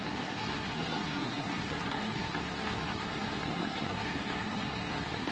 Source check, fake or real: fake